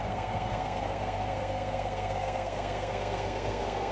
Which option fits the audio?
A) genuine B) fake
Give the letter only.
B